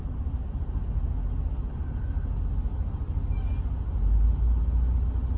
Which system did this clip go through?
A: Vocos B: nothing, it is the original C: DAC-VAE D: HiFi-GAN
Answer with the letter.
B